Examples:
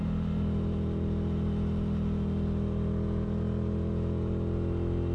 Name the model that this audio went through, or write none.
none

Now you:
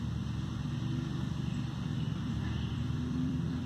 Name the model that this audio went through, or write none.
vocoder, BigVGAN v2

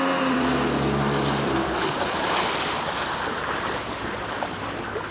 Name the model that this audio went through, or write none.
vocoder, BigVGAN v2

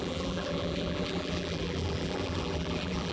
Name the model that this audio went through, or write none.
vocoder, BigVGAN v2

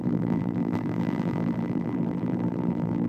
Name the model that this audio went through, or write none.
vocoder, BigVGAN v2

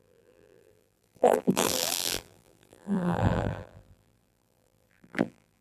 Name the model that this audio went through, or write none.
vocoder, BigVGAN v2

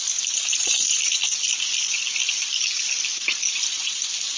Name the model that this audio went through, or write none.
none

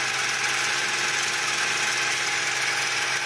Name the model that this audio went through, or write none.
none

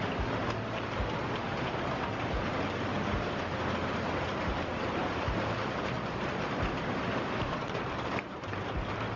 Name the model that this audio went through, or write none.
vocoder, BigVGAN v2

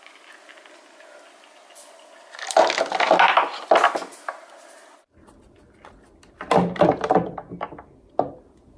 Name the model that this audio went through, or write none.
none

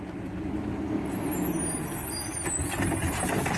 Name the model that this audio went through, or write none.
none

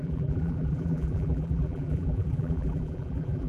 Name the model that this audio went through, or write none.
vocoder, BigVGAN v2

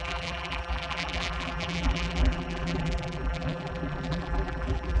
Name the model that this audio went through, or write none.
vocoder, BigVGAN v2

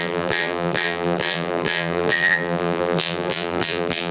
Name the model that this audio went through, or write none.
vocoder, BigVGAN v2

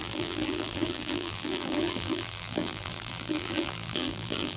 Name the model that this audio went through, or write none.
vocoder, BigVGAN v2